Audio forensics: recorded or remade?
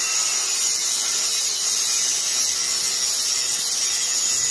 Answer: recorded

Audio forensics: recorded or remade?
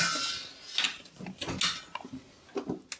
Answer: recorded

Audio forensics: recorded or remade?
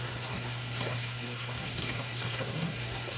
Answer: remade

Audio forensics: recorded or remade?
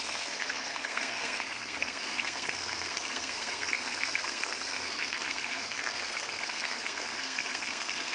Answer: remade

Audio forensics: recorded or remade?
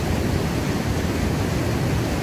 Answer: recorded